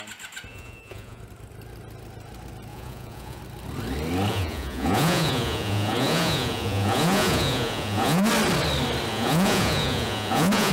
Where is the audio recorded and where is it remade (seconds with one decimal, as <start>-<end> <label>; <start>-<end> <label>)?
0.0-0.5 recorded; 0.5-1.2 remade; 1.2-2.7 recorded; 2.7-3.4 remade; 3.4-4.3 recorded; 4.3-8.3 remade; 8.3-9.1 recorded; 9.1-10.7 remade